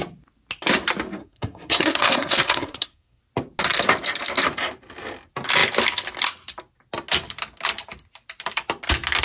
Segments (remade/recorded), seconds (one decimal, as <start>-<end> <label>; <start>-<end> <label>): 0.0-1.2 recorded; 1.2-3.2 remade; 3.2-9.2 recorded